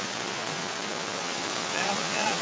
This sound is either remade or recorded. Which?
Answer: remade